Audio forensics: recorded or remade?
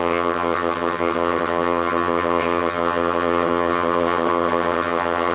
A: remade